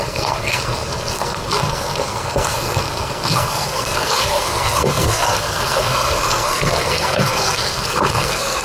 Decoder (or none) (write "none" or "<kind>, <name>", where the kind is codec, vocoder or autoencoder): codec, SNAC